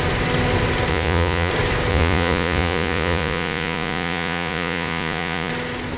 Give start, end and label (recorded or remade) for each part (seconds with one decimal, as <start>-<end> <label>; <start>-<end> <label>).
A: 0.0-0.9 recorded; 0.9-1.5 remade; 1.5-1.9 recorded; 1.9-5.5 remade; 5.5-6.0 recorded